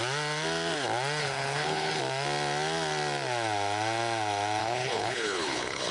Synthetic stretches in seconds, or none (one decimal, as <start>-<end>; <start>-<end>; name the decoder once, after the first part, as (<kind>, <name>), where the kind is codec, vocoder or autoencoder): 1.2-2.0 (codec, HILCodec); 4.6-5.9